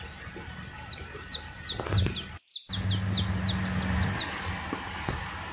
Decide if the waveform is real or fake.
real